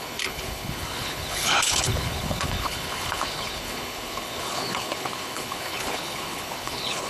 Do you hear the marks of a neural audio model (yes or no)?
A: yes